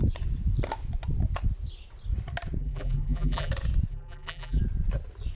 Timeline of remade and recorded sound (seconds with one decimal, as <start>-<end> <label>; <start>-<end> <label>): 0.0-2.6 recorded; 2.6-3.5 remade; 3.5-3.9 recorded; 3.9-4.6 remade; 4.6-5.3 recorded